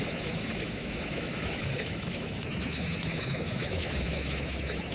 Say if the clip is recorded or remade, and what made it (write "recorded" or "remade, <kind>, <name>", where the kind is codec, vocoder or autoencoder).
remade, autoencoder, DAC-VAE